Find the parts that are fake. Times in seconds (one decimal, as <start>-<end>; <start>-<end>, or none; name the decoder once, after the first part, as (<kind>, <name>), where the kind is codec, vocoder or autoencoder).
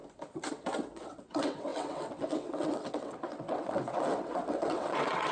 0.5-5.3 (vocoder, WaveNeXt)